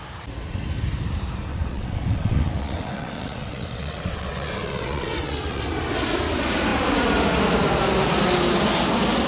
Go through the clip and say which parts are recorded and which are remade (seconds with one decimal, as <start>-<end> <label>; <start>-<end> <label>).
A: 0.0-1.5 recorded; 1.5-5.6 remade; 5.6-9.3 recorded